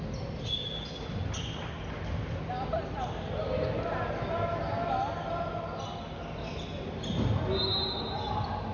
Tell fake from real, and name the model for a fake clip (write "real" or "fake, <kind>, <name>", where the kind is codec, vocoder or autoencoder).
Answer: real